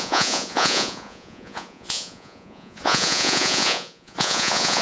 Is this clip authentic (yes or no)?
no